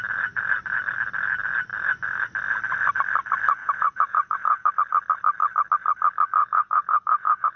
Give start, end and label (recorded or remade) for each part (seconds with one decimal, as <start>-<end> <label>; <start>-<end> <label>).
0.0-3.6 recorded; 3.6-4.7 remade; 4.7-6.4 recorded; 6.4-7.6 remade